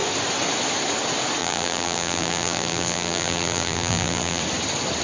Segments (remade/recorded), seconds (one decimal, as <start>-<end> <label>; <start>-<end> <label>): 0.0-1.4 recorded; 1.4-4.4 remade; 4.4-5.0 recorded